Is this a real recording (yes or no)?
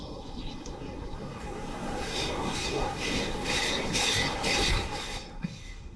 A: no